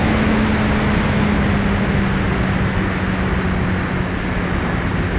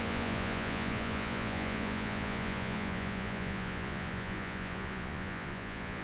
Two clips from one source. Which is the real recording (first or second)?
first